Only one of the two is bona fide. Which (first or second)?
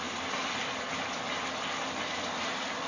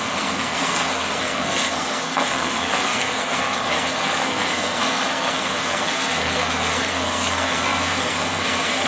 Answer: first